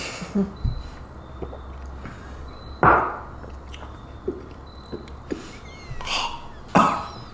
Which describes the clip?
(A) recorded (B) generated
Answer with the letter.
A